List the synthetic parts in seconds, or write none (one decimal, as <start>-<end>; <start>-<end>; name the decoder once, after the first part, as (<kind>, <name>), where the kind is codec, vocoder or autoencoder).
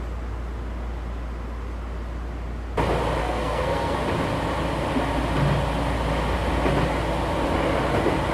3.2-4.0 (codec, SNAC)